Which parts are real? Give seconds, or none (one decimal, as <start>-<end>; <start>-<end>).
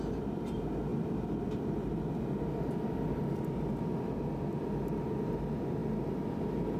0.0-6.8